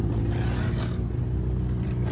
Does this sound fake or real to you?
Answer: real